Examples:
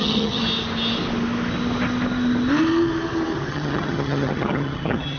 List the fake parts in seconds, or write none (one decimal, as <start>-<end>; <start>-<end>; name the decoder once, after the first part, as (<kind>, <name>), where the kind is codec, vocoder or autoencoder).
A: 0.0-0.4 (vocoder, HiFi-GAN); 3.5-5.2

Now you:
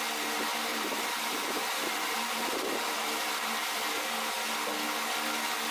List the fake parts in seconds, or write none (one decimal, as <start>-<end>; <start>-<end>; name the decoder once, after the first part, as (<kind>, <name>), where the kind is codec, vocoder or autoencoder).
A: 0.7-3.9 (vocoder, BigVGAN v2)

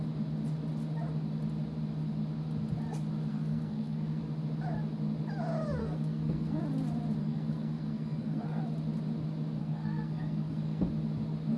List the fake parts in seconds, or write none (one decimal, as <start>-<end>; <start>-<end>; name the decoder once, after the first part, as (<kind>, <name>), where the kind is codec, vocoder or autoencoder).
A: 3.3-4.2 (codec, SNAC); 5.8-6.6; 7.2-8.6; 9.6-10.9